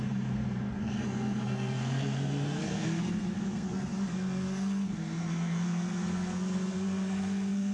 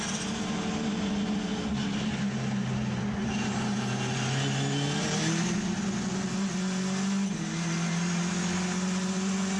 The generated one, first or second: first